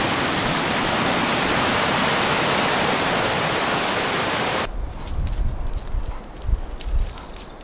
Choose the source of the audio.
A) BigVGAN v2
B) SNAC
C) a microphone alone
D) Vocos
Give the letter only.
C